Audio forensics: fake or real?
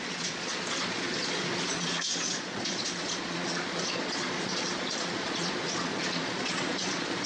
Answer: fake